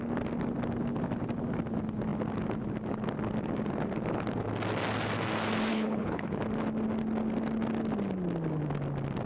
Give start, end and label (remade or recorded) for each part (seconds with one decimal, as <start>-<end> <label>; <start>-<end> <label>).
0.0-5.7 recorded; 5.7-6.4 remade; 6.4-9.3 recorded